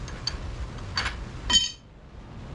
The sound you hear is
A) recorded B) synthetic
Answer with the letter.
A